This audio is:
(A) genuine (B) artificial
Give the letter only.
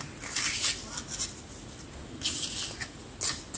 A